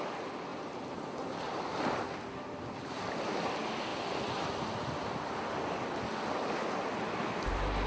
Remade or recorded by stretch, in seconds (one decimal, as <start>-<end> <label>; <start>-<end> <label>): 0.0-0.5 recorded; 0.5-1.4 remade; 1.4-3.9 recorded; 3.9-4.5 remade; 4.5-7.9 recorded